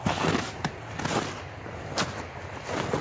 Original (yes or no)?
yes